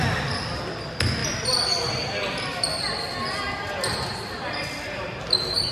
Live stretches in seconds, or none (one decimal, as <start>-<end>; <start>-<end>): 0.0-1.2; 3.4-5.7

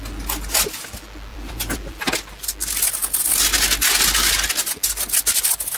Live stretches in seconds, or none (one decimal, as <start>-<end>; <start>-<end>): 0.0-1.3; 2.0-5.8

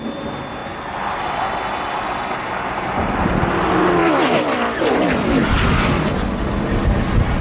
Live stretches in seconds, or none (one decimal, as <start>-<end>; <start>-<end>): 0.0-4.0; 4.8-7.4

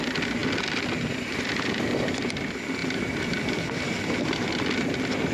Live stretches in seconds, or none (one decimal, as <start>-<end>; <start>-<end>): 0.0-0.4; 2.3-5.3

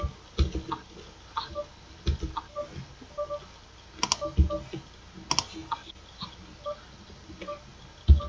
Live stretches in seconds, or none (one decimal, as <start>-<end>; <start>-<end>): 0.0-8.3

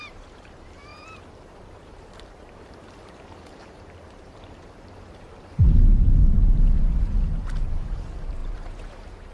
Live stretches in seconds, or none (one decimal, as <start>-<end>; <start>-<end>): none

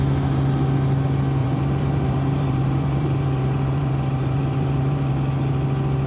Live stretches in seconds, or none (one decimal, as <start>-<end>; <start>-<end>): 0.0-1.4; 5.1-6.1

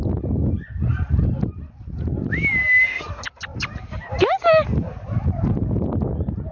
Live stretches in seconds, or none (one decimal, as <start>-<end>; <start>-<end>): 0.0-3.5; 4.2-6.5